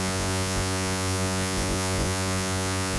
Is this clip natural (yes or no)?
no